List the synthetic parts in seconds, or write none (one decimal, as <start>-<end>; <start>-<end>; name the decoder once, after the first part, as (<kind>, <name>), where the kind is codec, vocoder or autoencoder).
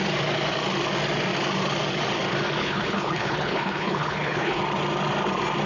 2.6-4.6 (codec, HILCodec)